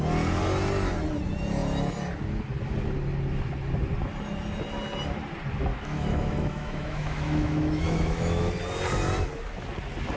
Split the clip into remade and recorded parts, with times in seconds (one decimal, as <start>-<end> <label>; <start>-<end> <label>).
0.0-5.7 recorded; 5.7-8.5 remade; 8.5-10.2 recorded